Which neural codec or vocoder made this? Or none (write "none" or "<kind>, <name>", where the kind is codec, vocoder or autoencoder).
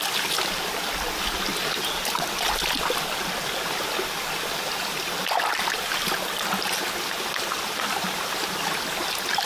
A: none